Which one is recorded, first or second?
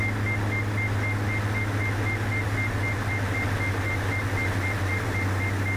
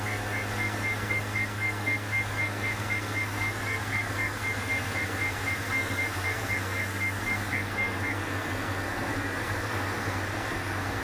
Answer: first